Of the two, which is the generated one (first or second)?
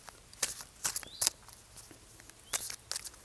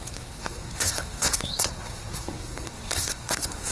second